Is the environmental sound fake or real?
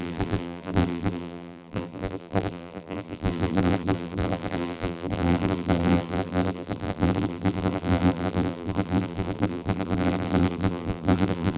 fake